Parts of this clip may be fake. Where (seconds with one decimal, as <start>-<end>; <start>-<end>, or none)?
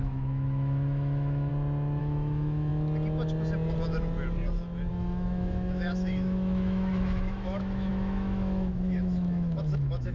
0.0-1.5; 2.0-2.7; 4.9-10.1